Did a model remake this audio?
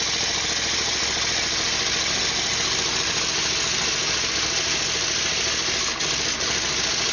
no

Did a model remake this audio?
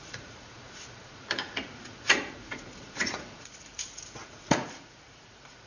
yes